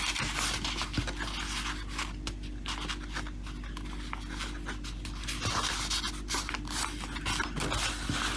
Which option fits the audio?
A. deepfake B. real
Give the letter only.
B